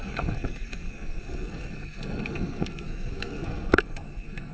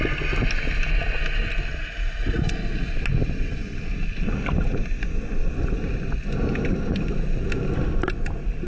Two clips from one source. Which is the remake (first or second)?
first